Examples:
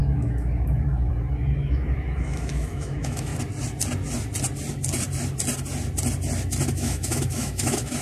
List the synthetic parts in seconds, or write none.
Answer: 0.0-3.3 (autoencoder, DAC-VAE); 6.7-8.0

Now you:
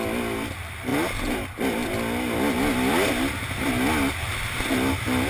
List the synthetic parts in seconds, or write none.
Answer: none

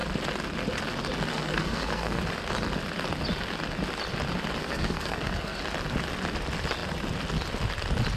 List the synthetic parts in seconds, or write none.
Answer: 1.3-2.2 (codec, SNAC); 4.6-5.6

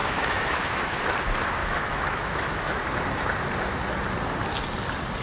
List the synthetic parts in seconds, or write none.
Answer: 0.0-1.0 (autoencoder, DAC-VAE); 1.6-2.8

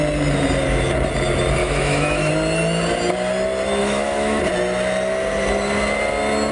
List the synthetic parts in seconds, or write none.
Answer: 1.6-2.3 (autoencoder, DAC-VAE); 3.8-4.4

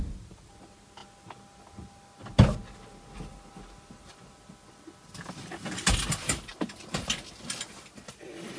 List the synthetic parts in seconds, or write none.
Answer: 6.5-7.1 (vocoder, BigVGAN v2)

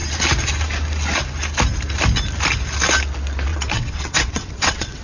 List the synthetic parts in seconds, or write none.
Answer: 3.5-5.0 (vocoder, WaveNeXt)

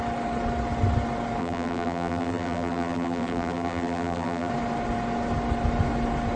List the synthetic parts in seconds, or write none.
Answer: 1.4-4.5 (vocoder, BigVGAN v2)